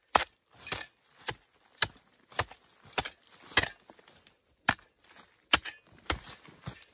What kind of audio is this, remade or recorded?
recorded